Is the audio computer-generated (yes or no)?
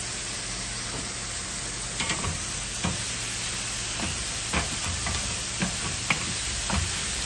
no